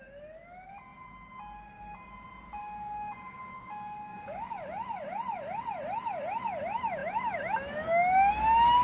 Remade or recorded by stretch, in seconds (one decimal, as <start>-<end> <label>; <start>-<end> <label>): 0.0-2.6 recorded; 2.6-4.5 remade; 4.5-8.8 recorded